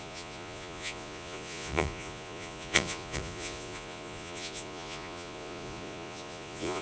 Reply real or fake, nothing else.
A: fake